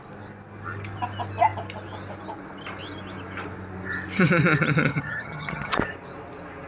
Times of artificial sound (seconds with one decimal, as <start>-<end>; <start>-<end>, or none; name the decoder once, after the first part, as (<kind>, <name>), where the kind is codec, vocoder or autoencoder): 4.9-5.7 (vocoder, HiFi-GAN)